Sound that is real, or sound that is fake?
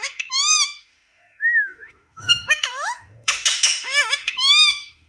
fake